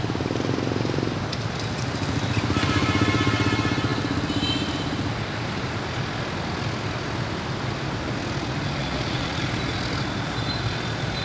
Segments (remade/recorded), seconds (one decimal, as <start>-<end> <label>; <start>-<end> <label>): 0.0-8.8 recorded; 8.8-9.4 remade; 9.4-11.2 recorded